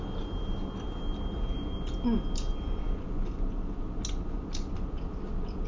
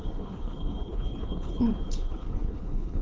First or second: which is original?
first